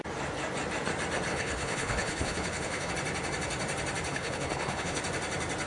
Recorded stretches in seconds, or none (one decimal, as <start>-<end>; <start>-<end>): 0.0-1.3; 2.9-4.1; 5.0-5.7